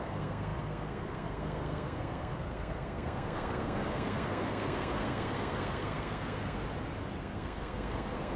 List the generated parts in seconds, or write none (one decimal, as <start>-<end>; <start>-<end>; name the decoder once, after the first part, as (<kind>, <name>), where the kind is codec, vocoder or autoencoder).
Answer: 0.0-6.6 (codec, SNAC); 7.2-8.4